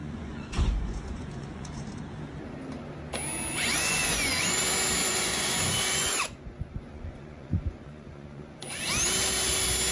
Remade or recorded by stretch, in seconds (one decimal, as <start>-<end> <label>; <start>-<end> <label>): 0.0-2.0 remade; 2.0-3.5 recorded; 3.5-4.6 remade; 4.6-5.0 recorded; 5.0-8.8 remade; 8.8-9.9 recorded